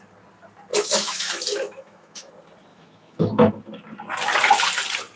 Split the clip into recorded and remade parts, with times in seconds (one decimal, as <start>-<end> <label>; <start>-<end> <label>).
0.0-0.7 recorded; 0.7-2.3 remade; 2.3-2.7 recorded; 2.7-3.5 remade; 3.5-5.2 recorded